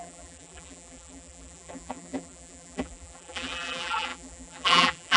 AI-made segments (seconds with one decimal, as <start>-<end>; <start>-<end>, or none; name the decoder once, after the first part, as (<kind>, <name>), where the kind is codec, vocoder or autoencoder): 0.0-5.2 (vocoder, BigVGAN v2)